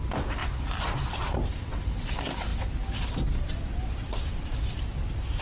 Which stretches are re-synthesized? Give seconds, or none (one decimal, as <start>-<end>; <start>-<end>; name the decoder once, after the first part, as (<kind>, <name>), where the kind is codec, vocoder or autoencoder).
0.4-1.2 (vocoder, BigVGAN v2); 2.5-5.4